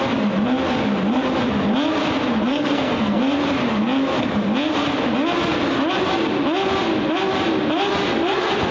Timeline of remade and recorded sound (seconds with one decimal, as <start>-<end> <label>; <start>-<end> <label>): 0.0-2.5 recorded; 2.5-3.2 remade; 3.2-8.7 recorded